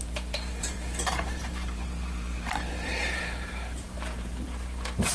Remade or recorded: remade